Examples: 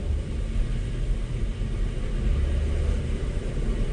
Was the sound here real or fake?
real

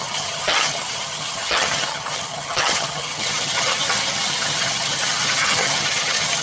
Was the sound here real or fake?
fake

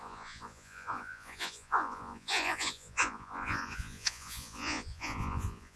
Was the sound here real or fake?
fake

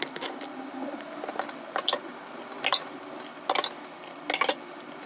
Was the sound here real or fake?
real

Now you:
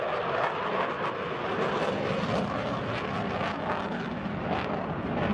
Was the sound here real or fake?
real